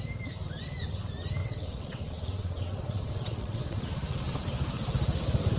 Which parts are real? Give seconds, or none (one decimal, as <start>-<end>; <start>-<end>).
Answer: 0.0-1.4; 3.9-5.6